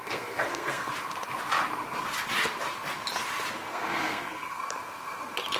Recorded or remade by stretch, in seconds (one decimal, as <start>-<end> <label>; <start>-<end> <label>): 0.0-0.9 remade; 0.9-3.7 recorded; 3.7-4.6 remade; 4.6-5.6 recorded